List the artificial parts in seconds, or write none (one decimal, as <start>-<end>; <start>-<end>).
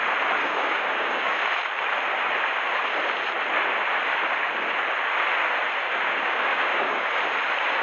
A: 0.4-1.4; 5.8-7.2